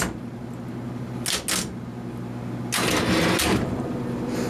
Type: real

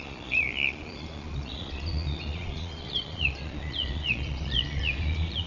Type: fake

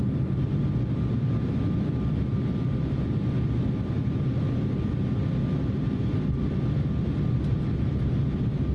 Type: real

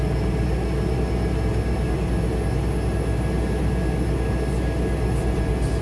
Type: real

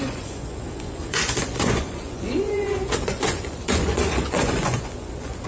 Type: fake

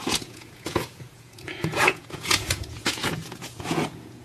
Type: fake